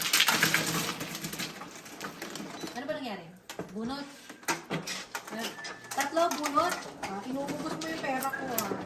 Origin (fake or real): real